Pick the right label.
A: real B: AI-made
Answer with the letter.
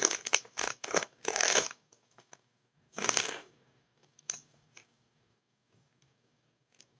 B